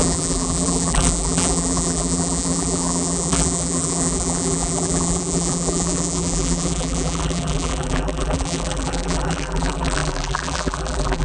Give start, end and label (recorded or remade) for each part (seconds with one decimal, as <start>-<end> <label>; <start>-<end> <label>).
0.0-11.2 remade